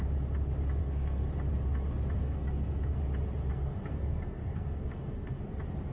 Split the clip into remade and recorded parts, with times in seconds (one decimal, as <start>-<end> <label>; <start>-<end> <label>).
0.0-0.8 recorded; 0.8-1.3 remade; 1.3-2.2 recorded; 2.2-3.0 remade; 3.0-3.5 recorded; 3.5-5.4 remade; 5.4-5.9 recorded

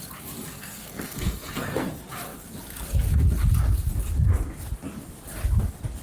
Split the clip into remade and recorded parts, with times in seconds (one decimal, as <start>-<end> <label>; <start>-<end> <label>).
0.0-0.5 recorded; 0.5-1.9 remade; 1.9-6.0 recorded

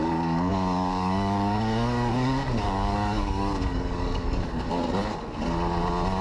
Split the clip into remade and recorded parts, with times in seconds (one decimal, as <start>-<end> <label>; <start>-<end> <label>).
0.0-4.7 remade; 4.7-6.2 recorded

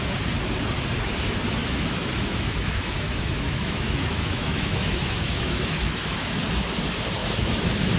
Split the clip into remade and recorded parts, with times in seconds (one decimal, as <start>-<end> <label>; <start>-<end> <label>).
0.0-1.6 recorded; 1.6-6.4 remade; 6.4-7.2 recorded; 7.2-8.0 remade